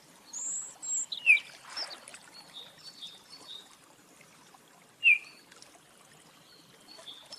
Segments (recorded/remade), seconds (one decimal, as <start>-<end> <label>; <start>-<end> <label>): 0.0-2.1 recorded; 2.1-6.5 remade; 6.5-7.4 recorded